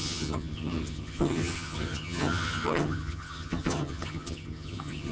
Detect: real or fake fake